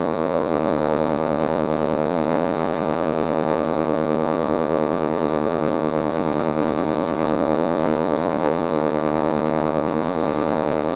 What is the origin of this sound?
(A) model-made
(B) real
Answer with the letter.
A